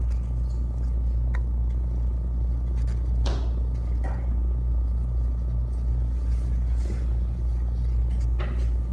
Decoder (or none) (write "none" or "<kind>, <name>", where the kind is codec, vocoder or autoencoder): none